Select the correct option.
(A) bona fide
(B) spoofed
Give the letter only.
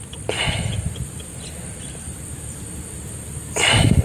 A